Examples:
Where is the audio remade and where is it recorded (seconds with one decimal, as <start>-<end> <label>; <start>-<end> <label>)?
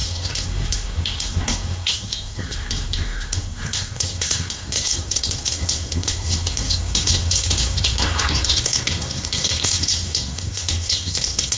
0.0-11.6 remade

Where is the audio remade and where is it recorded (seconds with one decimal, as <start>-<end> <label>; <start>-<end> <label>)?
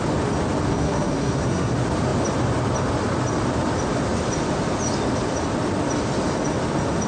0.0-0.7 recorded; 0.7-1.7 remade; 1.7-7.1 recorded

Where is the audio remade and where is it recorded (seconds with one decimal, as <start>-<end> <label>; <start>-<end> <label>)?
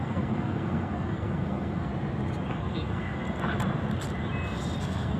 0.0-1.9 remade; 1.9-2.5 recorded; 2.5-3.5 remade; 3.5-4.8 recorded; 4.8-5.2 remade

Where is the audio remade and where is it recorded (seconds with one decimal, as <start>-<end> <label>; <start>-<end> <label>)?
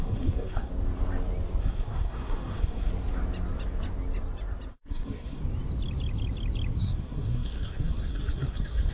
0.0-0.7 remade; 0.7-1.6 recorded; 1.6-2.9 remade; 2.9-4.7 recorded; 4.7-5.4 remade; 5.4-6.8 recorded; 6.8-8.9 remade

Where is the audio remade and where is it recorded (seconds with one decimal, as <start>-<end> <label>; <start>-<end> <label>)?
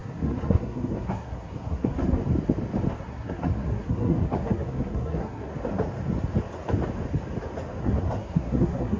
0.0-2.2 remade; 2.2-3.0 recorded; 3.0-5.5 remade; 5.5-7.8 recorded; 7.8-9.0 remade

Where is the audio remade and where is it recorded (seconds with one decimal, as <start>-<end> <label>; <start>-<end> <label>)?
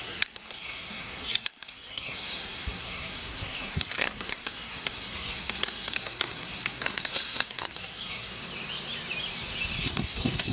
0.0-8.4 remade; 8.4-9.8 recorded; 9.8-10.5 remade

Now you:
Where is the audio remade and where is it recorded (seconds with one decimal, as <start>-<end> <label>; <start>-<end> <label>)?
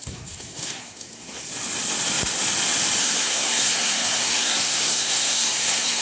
0.0-1.5 remade; 1.5-3.0 recorded; 3.0-6.0 remade